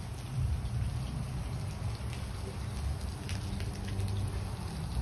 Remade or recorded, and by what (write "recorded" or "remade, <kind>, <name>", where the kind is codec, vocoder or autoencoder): recorded